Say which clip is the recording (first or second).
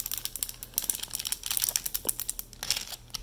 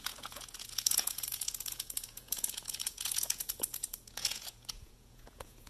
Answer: first